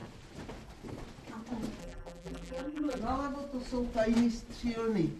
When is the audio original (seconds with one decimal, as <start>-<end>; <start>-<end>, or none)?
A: 0.0-1.8; 3.0-5.2